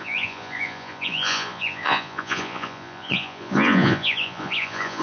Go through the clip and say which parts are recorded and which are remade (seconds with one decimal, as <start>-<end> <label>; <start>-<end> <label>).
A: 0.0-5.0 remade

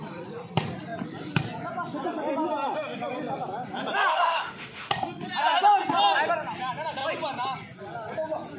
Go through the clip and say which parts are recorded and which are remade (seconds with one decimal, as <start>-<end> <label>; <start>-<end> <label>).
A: 0.0-4.1 recorded; 4.1-4.9 remade; 4.9-8.6 recorded

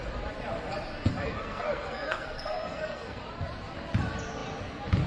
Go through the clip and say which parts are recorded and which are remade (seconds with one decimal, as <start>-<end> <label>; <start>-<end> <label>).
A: 0.0-1.1 recorded; 1.1-3.2 remade; 3.2-5.1 recorded